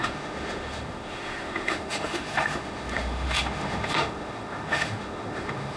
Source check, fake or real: fake